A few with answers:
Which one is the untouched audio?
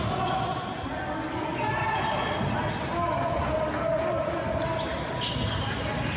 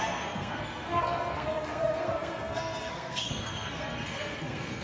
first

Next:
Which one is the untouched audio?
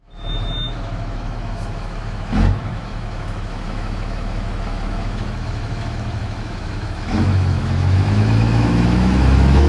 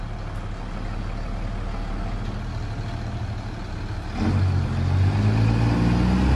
second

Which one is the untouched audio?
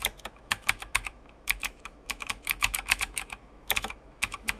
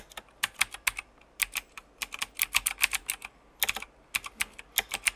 second